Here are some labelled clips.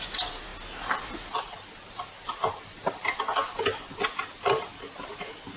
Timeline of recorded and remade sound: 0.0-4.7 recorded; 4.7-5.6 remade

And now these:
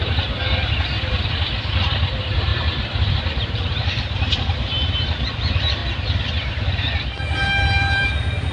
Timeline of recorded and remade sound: 0.0-5.8 remade; 5.8-6.5 recorded; 6.5-8.5 remade